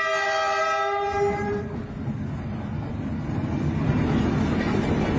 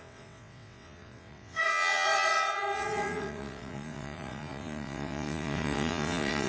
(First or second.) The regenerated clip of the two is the second